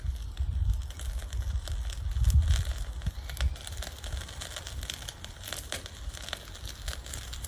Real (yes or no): yes